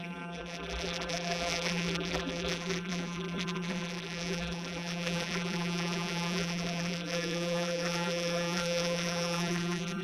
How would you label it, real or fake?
fake